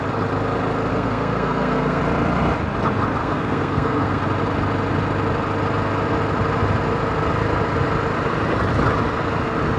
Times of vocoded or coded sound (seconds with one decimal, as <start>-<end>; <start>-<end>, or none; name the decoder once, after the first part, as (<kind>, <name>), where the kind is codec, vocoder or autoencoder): 0.9-2.0 (codec, SNAC); 3.2-4.2